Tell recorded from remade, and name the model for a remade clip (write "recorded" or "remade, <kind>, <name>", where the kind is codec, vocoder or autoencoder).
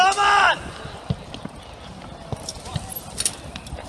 recorded